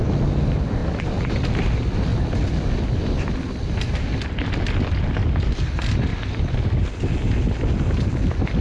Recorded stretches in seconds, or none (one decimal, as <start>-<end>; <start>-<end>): 0.0-8.6